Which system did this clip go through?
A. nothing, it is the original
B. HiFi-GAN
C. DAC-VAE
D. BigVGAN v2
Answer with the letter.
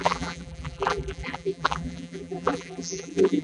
D